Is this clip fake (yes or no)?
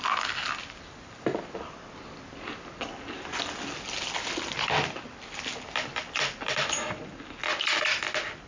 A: no